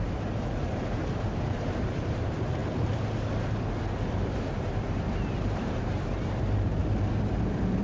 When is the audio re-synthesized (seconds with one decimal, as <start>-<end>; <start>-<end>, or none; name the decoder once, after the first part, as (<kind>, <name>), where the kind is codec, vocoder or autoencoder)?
0.0-2.6 (vocoder, BigVGAN v2); 4.2-6.8